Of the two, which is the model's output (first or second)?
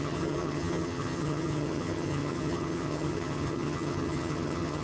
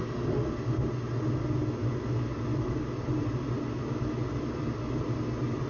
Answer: first